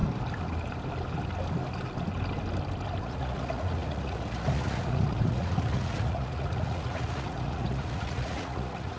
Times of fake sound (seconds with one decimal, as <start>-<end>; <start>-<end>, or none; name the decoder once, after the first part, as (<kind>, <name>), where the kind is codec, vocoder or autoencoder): 3.0-9.0 (vocoder, Vocos)